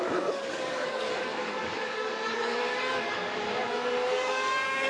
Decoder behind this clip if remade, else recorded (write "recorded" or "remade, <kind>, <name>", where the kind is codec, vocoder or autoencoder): remade, codec, DAC